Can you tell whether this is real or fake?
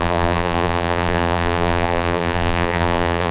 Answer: fake